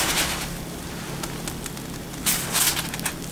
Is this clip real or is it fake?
real